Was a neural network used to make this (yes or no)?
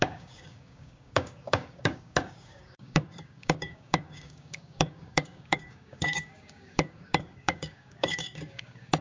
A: yes